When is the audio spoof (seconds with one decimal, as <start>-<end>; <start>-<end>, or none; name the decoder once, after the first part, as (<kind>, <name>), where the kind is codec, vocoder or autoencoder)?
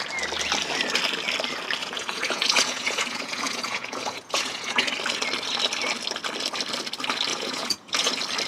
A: 1.8-4.9 (vocoder, Vocos); 7.3-8.1